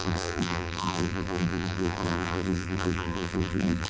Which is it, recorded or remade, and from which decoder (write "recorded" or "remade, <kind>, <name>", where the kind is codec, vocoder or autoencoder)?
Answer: remade, vocoder, BigVGAN v2